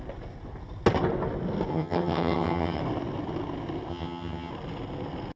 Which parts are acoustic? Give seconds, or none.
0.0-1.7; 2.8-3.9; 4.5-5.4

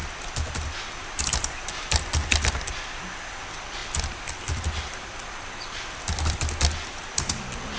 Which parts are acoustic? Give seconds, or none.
0.0-7.8